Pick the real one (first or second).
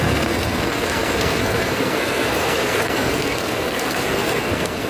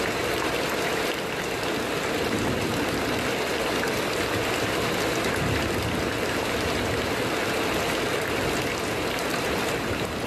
second